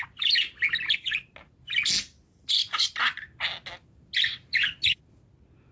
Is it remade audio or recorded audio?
recorded